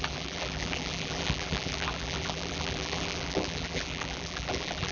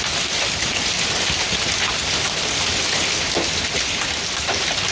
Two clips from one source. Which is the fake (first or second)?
first